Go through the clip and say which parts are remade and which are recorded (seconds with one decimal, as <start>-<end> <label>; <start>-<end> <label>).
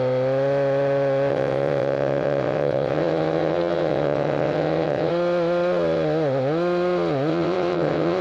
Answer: 0.0-1.3 recorded; 1.3-5.1 remade; 5.1-7.3 recorded; 7.3-8.2 remade